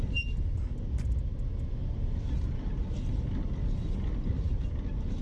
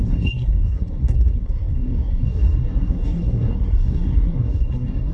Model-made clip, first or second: second